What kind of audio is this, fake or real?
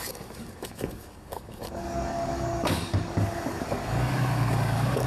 fake